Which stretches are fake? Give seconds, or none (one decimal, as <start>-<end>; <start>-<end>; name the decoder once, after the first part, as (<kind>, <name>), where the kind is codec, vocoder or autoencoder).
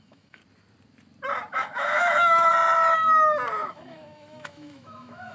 0.0-0.4 (autoencoder, DAC-VAE); 1.5-2.5; 3.5-5.3